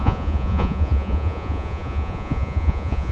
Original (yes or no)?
no